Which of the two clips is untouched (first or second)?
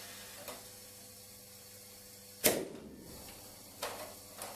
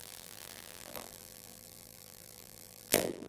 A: first